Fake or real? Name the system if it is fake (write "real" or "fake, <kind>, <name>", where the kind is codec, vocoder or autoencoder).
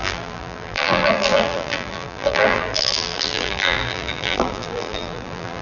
fake, vocoder, BigVGAN v2